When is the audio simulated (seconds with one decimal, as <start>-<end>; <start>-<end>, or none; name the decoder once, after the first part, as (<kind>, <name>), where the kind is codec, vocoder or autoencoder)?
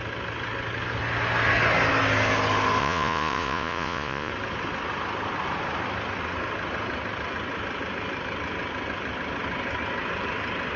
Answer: 2.8-4.3 (vocoder, Vocos)